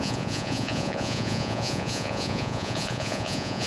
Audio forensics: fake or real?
fake